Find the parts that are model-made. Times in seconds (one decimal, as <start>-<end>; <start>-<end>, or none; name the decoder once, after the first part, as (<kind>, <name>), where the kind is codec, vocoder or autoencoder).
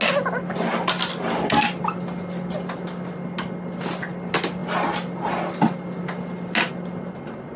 none